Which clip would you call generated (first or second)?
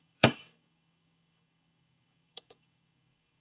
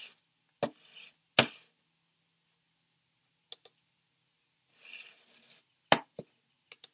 first